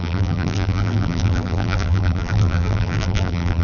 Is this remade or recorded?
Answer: remade